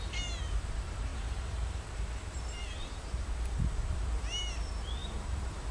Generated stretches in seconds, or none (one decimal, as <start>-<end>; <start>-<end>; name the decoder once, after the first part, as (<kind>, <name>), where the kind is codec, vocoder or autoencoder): 1.1-3.3 (vocoder, BigVGAN v2); 5.0-5.7